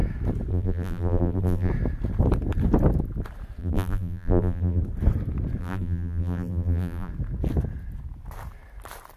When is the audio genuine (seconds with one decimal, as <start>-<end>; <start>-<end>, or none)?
0.0-0.5; 1.7-3.6; 4.8-5.6; 7.1-9.2